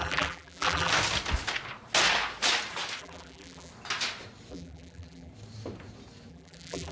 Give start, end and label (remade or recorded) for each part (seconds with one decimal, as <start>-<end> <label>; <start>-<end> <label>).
0.0-0.9 remade; 0.9-3.0 recorded; 3.0-3.7 remade; 3.7-4.5 recorded; 4.5-5.3 remade; 5.3-6.3 recorded; 6.3-6.9 remade